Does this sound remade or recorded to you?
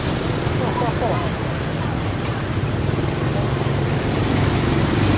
recorded